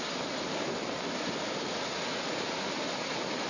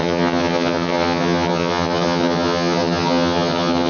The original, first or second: first